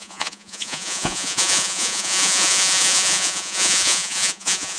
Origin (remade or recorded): remade